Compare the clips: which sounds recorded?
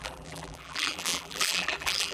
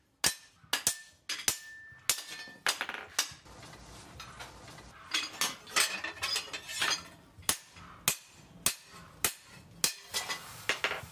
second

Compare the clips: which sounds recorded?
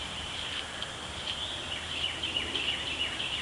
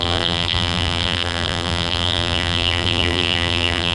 first